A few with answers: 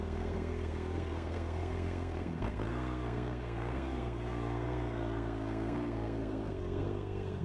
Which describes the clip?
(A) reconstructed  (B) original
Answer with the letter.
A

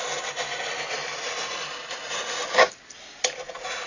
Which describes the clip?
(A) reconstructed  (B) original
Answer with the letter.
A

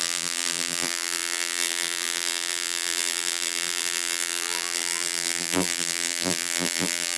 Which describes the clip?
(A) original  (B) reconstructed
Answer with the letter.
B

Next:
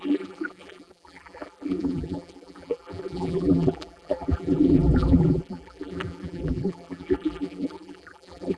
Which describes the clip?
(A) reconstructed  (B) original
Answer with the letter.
A